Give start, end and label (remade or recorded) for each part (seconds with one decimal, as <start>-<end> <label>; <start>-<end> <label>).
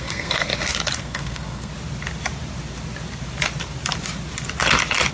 0.0-0.5 remade; 0.5-1.0 recorded; 1.0-1.7 remade; 1.7-5.1 recorded